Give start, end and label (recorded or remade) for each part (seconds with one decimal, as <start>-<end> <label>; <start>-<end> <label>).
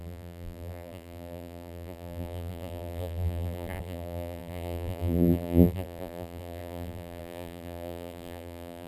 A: 0.0-8.9 remade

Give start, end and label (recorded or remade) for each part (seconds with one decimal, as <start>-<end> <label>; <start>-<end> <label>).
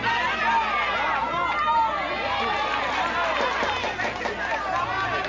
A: 0.0-5.3 recorded